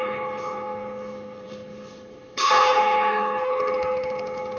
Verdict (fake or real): fake